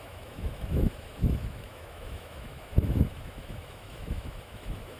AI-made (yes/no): yes